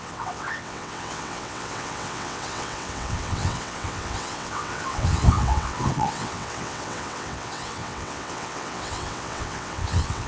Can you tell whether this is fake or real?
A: fake